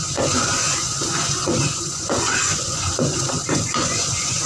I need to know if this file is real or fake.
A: fake